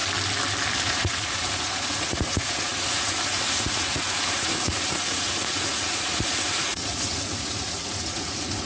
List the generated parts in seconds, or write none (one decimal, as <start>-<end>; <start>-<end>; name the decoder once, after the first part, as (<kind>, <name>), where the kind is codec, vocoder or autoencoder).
0.8-8.7 (vocoder, Vocos)